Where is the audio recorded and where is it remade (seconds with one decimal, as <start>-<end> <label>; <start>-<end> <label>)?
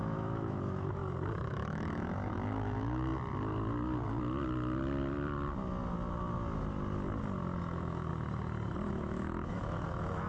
0.0-1.0 remade; 1.0-1.5 recorded; 1.5-3.1 remade; 3.1-7.6 recorded; 7.6-8.1 remade; 8.1-8.9 recorded; 8.9-10.3 remade